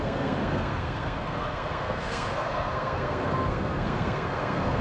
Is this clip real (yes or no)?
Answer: no